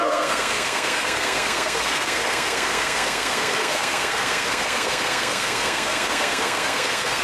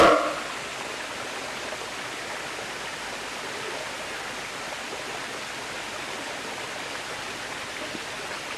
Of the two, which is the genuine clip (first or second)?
second